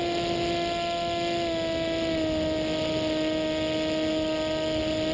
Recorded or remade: recorded